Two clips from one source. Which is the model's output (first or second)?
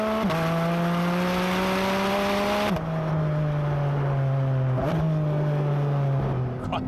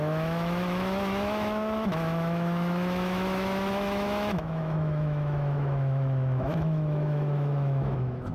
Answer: second